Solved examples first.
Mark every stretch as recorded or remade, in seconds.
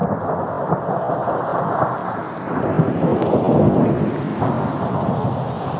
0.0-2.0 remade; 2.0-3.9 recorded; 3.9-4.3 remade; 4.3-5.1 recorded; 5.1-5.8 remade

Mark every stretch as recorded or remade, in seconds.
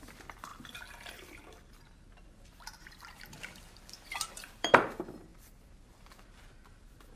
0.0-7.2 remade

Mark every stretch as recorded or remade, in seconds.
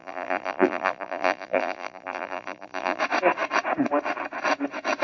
0.0-3.0 remade; 3.0-5.0 recorded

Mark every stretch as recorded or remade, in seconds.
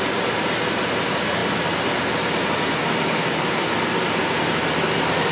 0.0-5.3 recorded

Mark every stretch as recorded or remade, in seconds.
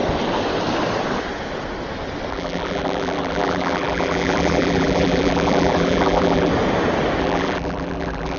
0.0-2.3 recorded; 2.3-6.5 remade; 6.5-7.2 recorded; 7.2-8.4 remade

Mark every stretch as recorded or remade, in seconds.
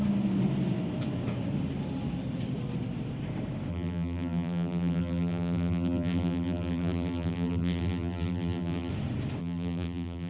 0.0-3.7 recorded; 3.7-8.9 remade; 8.9-9.4 recorded; 9.4-10.3 remade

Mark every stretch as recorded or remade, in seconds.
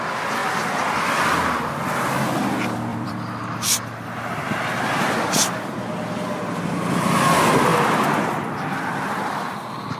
0.0-0.4 recorded; 0.4-1.8 remade; 1.8-2.9 recorded; 2.9-7.3 remade; 7.3-10.0 recorded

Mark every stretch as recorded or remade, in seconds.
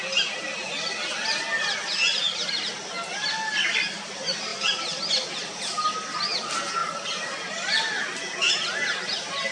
0.0-6.8 recorded; 6.8-8.0 remade; 8.0-9.5 recorded